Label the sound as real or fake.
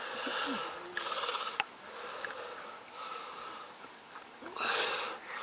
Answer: fake